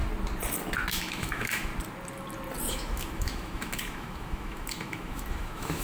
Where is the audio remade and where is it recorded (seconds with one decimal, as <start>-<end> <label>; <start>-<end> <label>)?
0.0-0.9 recorded; 0.9-1.7 remade; 1.7-2.7 recorded; 2.7-5.8 remade